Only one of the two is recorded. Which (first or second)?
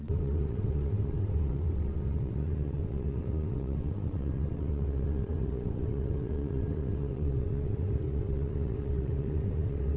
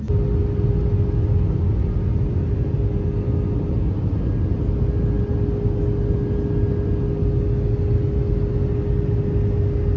second